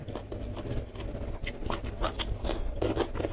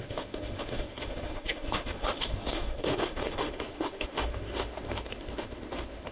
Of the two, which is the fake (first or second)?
second